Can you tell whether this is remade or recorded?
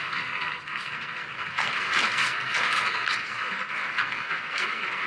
remade